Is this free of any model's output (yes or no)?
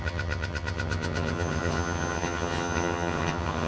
no